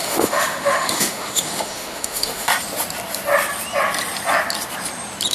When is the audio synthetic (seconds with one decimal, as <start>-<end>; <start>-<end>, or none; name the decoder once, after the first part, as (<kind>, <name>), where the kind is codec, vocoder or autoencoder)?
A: 0.0-2.5 (autoencoder, DAC-VAE)